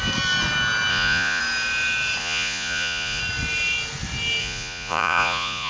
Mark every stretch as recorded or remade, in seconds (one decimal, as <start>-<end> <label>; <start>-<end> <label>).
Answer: 0.0-0.9 recorded; 0.9-1.4 remade; 1.4-2.2 recorded; 2.2-3.2 remade; 3.2-4.4 recorded; 4.4-5.7 remade